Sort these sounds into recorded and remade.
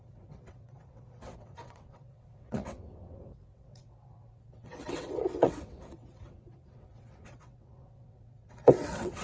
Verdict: remade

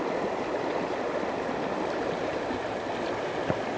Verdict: recorded